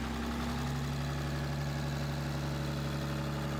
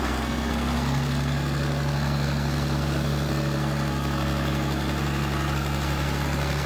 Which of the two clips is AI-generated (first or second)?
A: second